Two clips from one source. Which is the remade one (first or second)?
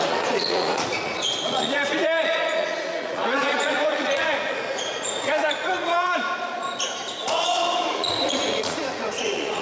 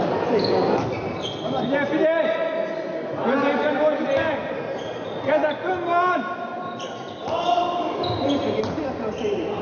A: first